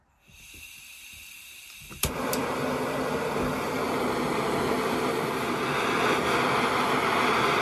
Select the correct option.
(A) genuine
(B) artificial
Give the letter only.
B